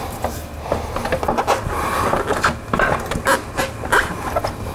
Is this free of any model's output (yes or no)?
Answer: yes